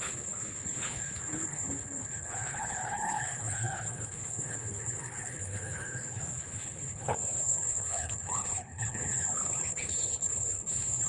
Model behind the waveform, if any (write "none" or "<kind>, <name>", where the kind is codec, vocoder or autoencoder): codec, HILCodec